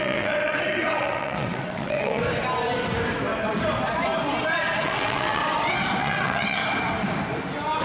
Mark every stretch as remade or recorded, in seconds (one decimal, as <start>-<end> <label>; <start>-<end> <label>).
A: 0.0-2.2 remade; 2.2-4.8 recorded; 4.8-5.4 remade; 5.4-6.0 recorded; 6.0-6.6 remade; 6.6-7.8 recorded